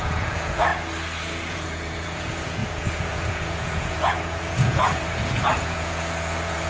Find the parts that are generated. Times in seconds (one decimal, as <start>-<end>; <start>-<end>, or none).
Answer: 0.0-0.7; 1.5-6.7